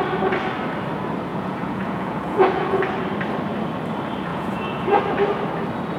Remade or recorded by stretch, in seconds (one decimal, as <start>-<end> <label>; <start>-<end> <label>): 0.0-1.3 recorded; 1.3-2.8 remade; 2.8-4.3 recorded; 4.3-5.0 remade; 5.0-6.0 recorded